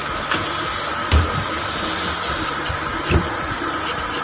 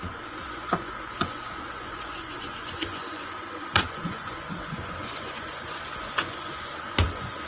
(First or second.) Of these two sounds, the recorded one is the first